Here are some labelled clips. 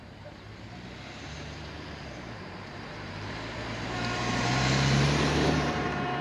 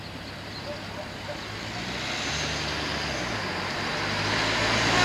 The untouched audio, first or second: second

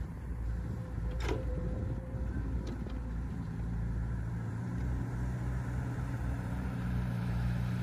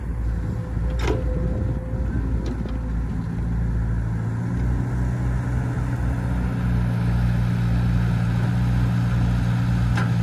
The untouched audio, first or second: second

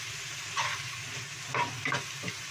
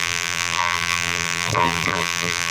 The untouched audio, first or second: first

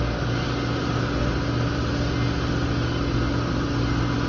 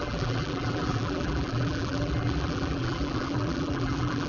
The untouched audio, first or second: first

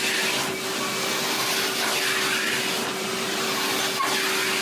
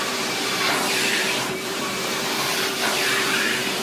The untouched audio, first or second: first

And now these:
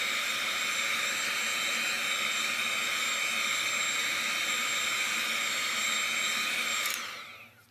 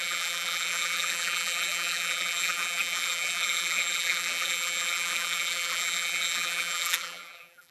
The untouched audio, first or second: first